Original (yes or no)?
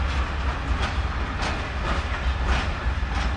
yes